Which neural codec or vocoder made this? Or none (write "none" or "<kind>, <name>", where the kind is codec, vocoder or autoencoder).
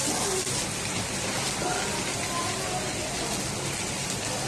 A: none